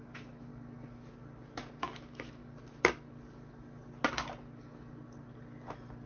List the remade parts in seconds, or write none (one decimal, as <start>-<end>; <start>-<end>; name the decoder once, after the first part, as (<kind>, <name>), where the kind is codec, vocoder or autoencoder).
0.0-0.5 (autoencoder, DAC-VAE); 1.8-2.4

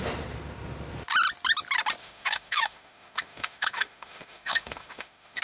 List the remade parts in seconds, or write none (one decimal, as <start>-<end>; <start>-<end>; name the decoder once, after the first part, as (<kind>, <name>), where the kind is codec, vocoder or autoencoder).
2.0-5.4 (autoencoder, DAC-VAE)

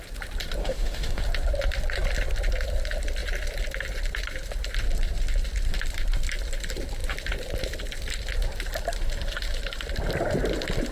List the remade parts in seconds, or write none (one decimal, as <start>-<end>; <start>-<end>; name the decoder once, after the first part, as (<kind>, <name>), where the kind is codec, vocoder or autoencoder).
0.6-1.2 (autoencoder, DAC-VAE)

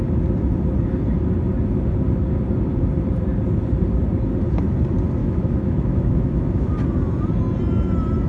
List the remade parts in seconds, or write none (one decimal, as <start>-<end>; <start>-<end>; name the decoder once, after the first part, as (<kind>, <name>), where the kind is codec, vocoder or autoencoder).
5.2-6.7 (autoencoder, DAC-VAE)